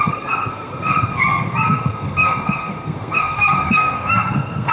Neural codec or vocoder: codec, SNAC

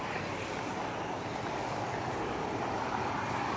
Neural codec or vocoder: none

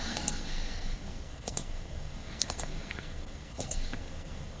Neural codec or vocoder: codec, SNAC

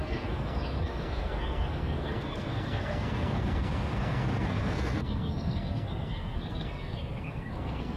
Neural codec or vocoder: codec, SNAC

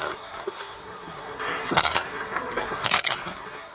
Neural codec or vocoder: codec, SNAC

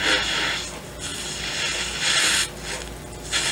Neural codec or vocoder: none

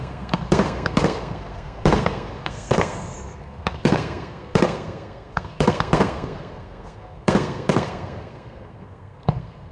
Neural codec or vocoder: codec, SNAC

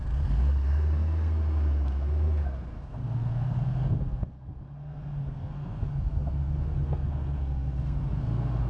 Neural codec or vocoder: codec, SNAC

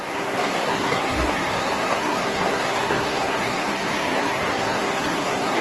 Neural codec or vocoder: codec, SNAC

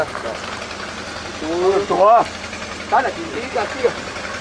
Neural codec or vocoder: none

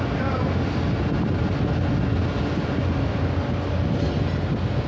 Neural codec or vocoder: none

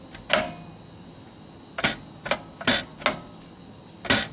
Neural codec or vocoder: none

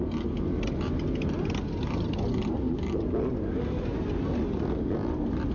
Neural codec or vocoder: none